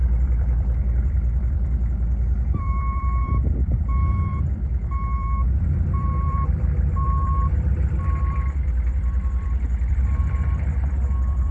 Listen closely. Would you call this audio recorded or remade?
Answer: remade